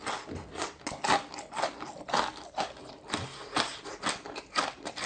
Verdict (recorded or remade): recorded